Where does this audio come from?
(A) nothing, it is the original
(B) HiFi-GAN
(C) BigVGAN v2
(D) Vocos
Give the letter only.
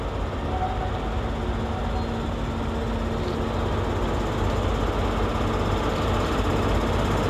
A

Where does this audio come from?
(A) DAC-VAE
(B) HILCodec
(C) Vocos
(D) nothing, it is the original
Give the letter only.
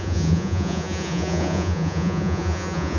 C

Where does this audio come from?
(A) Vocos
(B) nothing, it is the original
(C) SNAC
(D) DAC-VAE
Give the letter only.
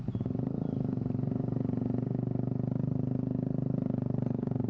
B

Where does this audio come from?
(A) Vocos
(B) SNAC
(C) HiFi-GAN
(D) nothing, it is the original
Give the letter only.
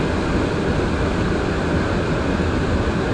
D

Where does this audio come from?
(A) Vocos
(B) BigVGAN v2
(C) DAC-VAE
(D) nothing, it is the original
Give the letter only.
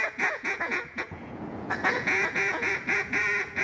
A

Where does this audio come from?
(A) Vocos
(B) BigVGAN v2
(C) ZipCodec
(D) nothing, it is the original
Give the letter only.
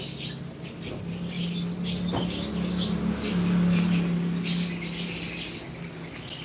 D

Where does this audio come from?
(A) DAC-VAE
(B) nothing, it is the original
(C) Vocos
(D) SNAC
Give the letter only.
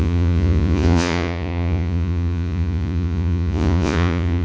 C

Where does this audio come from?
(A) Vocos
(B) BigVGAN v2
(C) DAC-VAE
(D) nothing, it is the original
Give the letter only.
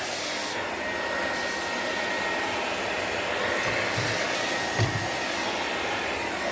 D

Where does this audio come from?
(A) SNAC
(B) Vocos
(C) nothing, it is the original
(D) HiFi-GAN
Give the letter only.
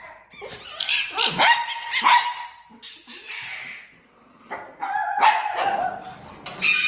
C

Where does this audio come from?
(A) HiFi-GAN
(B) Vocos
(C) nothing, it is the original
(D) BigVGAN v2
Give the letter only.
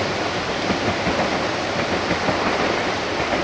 C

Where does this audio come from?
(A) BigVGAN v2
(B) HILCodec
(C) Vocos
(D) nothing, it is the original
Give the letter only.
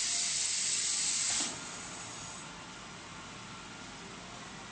D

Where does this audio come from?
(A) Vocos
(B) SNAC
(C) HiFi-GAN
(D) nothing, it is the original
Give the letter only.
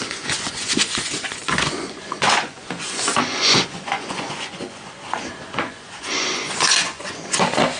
A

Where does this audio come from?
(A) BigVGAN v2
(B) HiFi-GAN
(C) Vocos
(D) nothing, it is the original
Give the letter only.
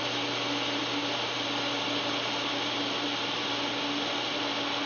D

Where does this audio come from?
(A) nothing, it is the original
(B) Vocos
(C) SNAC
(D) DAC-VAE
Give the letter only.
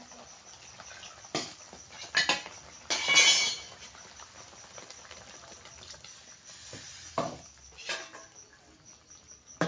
A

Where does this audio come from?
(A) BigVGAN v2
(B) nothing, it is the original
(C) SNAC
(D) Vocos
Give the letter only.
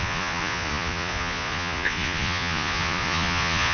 D